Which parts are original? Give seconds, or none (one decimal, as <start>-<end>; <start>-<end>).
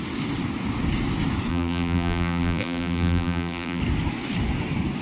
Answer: 0.0-1.5; 3.8-5.0